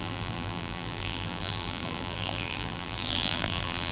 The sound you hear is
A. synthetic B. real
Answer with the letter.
A